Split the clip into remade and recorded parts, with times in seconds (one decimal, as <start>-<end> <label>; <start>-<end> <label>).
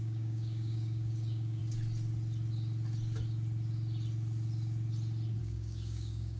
0.0-1.6 remade; 1.6-5.4 recorded; 5.4-6.4 remade